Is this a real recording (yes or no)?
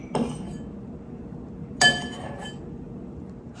yes